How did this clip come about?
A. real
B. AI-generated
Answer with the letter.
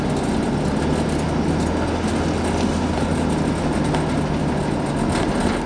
A